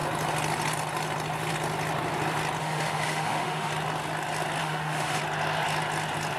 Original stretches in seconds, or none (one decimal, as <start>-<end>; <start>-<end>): 0.0-2.6; 3.7-4.6; 5.2-6.4